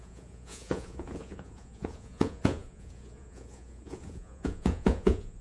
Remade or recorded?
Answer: remade